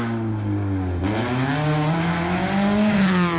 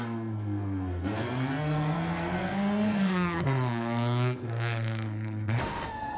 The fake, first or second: second